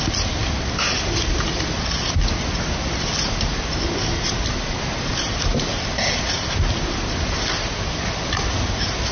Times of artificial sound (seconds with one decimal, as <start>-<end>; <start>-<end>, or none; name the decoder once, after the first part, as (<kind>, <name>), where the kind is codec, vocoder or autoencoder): none